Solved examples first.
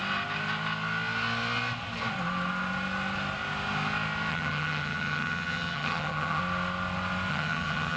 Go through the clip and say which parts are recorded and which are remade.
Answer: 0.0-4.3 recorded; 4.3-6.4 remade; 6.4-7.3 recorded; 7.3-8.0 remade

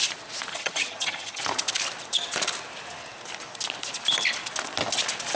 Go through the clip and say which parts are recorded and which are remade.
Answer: 0.0-0.5 recorded; 0.5-1.4 remade; 1.4-5.4 recorded

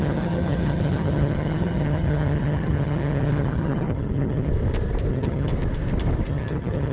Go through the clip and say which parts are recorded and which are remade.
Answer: 0.0-4.5 remade; 4.5-5.1 recorded; 5.1-5.5 remade; 5.5-6.3 recorded; 6.3-6.9 remade

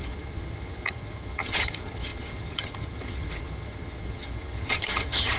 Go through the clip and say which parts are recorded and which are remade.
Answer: 0.0-5.4 remade

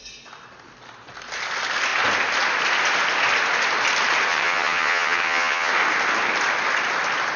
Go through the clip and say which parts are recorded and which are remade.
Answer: 0.0-4.3 recorded; 4.3-5.7 remade; 5.7-7.4 recorded

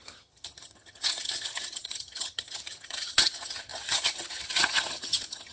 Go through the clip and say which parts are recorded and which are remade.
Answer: 0.0-5.5 remade